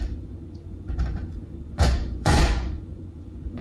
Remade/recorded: remade